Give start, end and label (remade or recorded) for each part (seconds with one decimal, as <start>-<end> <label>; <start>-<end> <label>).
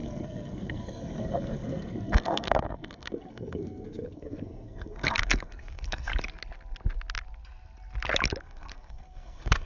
0.0-6.1 remade; 6.1-8.4 recorded; 8.4-9.7 remade